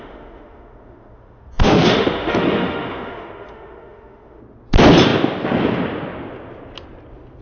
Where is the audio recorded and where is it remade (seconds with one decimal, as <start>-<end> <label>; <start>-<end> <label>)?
0.0-4.4 remade; 4.4-7.4 recorded